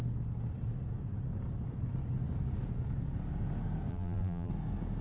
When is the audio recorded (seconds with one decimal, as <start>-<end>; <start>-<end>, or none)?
0.0-3.9; 4.5-5.0